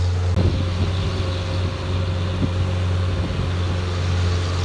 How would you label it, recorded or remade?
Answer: recorded